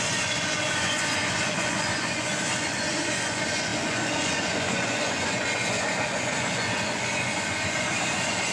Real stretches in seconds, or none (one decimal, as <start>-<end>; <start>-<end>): none